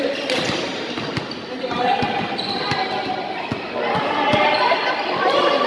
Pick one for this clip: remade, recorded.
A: recorded